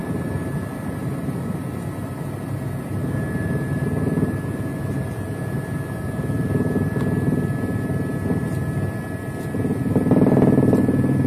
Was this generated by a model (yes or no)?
no